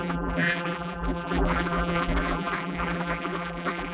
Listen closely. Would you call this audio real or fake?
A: fake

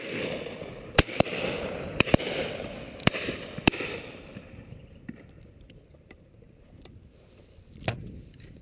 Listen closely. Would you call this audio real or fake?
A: fake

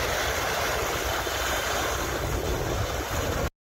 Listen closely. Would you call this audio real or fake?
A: real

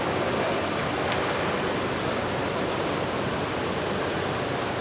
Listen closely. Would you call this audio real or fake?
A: fake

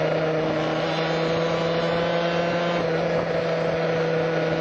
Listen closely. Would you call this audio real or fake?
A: real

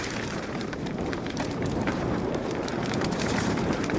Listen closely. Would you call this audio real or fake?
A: fake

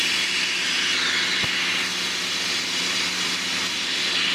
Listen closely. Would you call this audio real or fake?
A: real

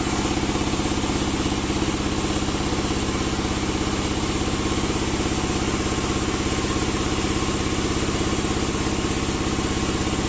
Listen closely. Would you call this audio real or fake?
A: real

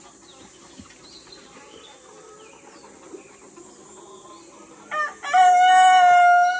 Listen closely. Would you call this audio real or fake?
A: real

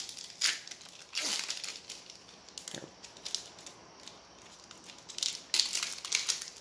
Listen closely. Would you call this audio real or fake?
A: real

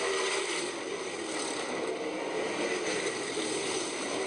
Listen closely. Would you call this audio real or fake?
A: real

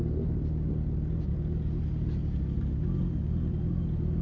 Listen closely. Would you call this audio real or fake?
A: real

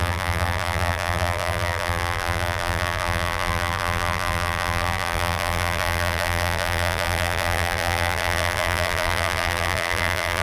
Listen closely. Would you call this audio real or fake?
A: fake